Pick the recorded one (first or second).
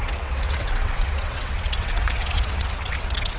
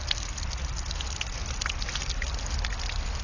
second